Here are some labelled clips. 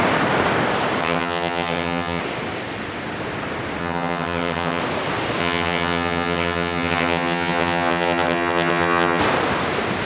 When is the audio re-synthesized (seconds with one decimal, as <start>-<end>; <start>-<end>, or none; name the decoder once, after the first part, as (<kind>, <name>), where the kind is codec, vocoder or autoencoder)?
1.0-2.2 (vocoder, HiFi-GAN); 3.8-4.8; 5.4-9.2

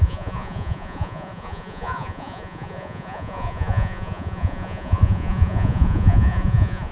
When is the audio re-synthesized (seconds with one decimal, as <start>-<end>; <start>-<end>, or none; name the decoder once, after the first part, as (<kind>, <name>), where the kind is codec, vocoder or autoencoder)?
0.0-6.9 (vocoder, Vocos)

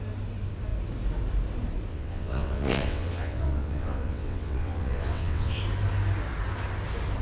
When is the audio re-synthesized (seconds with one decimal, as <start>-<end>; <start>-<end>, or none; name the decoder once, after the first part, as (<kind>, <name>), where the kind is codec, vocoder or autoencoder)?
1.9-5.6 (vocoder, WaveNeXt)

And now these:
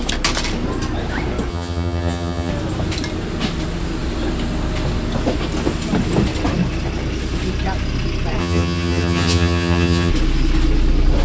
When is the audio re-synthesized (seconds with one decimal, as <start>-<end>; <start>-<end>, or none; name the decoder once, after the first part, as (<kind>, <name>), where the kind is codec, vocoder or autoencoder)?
1.5-2.5 (vocoder, HiFi-GAN); 8.4-10.1

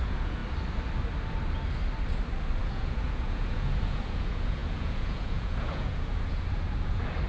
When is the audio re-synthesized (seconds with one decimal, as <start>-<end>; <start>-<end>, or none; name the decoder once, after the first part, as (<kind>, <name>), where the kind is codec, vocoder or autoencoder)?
0.0-0.4 (vocoder, Vocos); 2.6-7.3

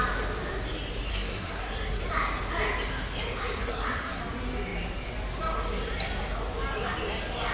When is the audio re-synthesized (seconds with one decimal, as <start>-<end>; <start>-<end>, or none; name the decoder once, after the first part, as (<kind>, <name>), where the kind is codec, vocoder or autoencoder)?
1.1-2.0 (codec, SNAC); 3.6-4.2

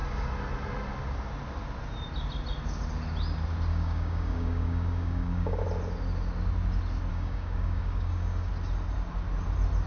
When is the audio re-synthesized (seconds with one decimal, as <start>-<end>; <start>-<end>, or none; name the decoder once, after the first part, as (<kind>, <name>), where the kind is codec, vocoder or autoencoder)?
3.7-5.6 (codec, DAC); 7.1-8.5

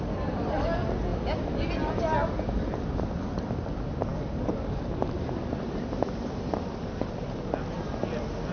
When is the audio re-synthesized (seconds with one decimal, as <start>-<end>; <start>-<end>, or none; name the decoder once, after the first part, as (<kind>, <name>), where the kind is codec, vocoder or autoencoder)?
none